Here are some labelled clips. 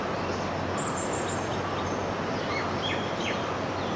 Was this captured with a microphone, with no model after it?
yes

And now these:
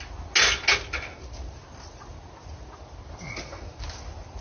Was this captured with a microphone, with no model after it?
yes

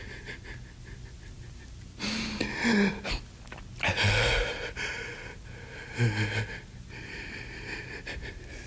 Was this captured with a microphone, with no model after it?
yes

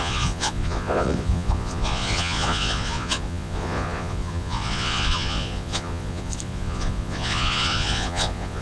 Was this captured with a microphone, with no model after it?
no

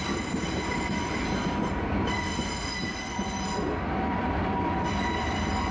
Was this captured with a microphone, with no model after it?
no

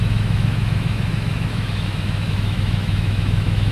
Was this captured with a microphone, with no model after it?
no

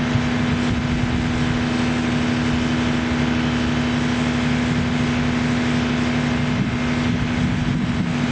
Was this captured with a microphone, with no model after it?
yes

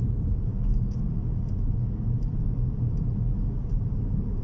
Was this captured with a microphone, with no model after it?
yes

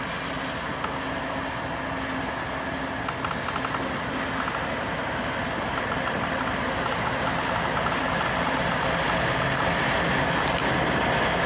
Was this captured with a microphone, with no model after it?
yes